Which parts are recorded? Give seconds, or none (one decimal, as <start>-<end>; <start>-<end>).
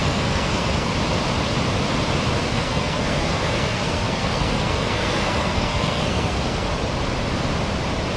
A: 0.9-2.4; 6.7-8.2